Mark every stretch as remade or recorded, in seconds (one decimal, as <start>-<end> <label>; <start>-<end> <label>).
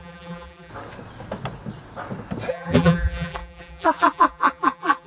0.0-0.7 remade; 0.7-2.5 recorded; 2.5-5.1 remade